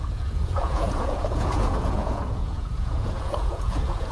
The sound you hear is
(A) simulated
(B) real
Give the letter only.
A